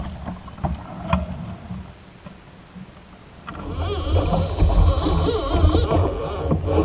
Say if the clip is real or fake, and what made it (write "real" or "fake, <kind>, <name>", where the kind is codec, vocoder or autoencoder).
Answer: real